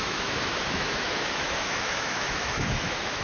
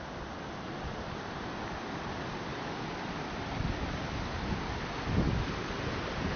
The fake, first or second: first